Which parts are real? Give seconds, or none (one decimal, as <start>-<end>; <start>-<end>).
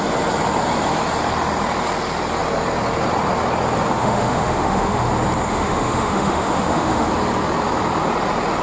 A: 0.0-4.0; 5.1-5.5; 7.1-8.6